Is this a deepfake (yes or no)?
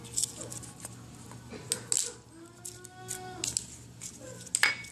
no